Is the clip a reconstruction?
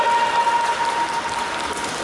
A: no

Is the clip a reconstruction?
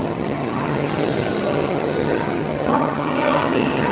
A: yes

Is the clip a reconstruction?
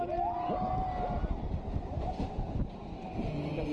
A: no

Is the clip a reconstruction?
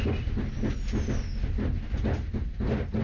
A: no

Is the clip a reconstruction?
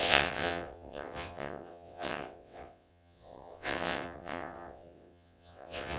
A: yes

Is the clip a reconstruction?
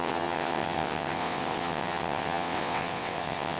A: yes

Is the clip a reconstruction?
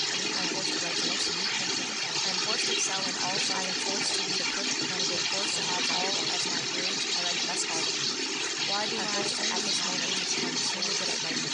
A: no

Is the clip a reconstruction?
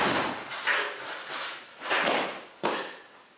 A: no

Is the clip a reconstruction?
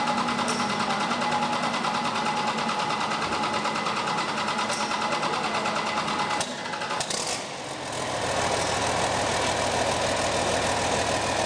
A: no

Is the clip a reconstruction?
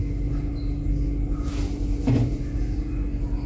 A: no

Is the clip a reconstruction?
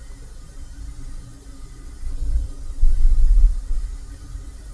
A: no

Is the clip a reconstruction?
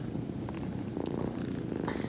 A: no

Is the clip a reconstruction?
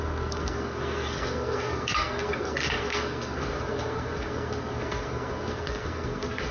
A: yes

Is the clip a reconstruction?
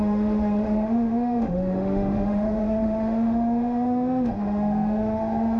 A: yes